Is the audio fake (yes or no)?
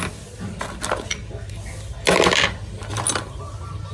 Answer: no